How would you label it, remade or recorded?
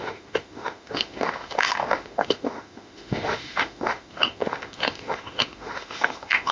remade